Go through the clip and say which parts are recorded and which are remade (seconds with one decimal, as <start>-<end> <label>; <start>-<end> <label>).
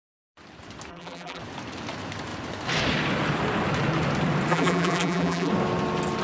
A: 0.0-0.9 recorded; 0.9-1.4 remade; 1.4-4.5 recorded; 4.5-5.5 remade; 5.5-6.2 recorded